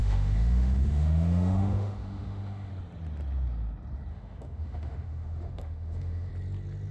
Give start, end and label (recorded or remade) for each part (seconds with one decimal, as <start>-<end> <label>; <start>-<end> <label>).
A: 0.0-2.7 remade; 2.7-4.1 recorded; 4.1-6.3 remade; 6.3-6.9 recorded